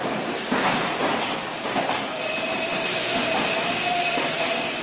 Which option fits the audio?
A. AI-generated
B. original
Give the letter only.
B